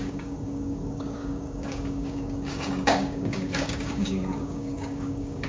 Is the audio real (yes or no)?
no